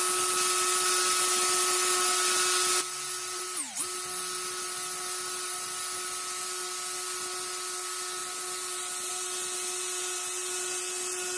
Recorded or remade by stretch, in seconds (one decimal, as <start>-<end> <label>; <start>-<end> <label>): 0.0-11.4 recorded